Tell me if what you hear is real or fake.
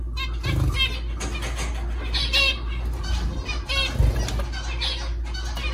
real